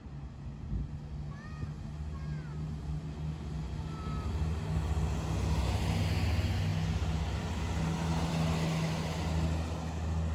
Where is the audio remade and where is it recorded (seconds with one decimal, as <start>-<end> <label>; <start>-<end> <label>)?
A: 0.0-10.3 recorded